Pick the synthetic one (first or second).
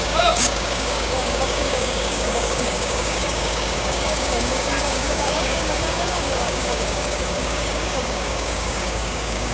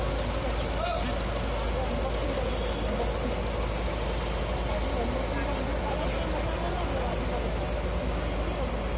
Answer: first